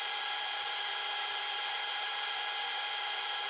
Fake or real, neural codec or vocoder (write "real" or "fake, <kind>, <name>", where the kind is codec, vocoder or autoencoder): real